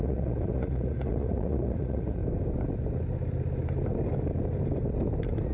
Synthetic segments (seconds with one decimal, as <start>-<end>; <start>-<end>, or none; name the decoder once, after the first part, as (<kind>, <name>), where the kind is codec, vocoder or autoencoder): 0.0-2.2 (vocoder, Vocos)